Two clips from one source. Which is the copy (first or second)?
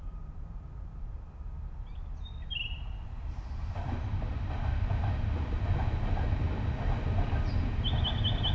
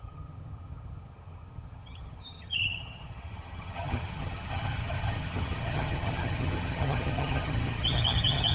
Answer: second